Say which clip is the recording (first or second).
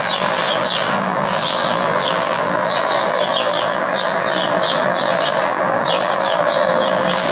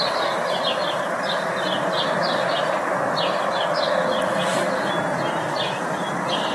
second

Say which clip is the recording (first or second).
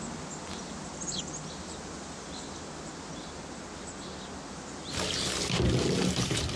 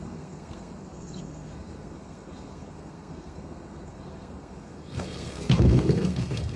first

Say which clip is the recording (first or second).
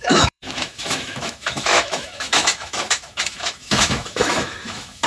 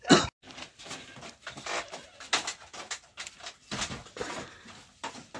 second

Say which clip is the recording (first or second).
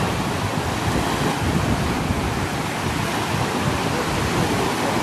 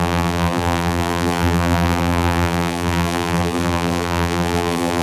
first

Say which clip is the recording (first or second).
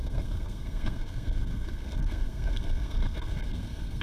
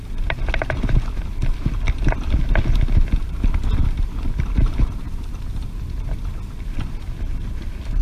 second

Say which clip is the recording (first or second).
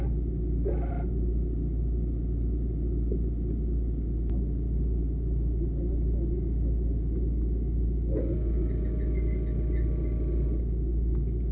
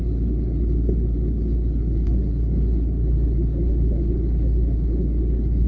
first